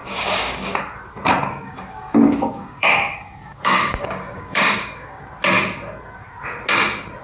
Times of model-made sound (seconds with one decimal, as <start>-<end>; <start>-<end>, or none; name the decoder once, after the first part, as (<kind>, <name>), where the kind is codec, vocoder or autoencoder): 0.0-0.8 (codec, DAC); 1.6-5.2